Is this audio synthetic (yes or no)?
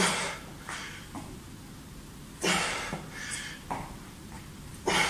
no